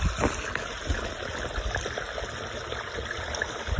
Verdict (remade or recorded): recorded